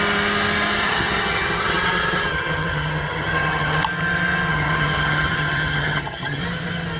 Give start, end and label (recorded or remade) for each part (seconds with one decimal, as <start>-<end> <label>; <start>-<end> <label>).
0.0-0.8 recorded; 0.8-3.8 remade; 3.8-4.5 recorded; 4.5-6.4 remade; 6.4-7.0 recorded